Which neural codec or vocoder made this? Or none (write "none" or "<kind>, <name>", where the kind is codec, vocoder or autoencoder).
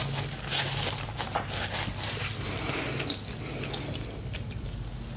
none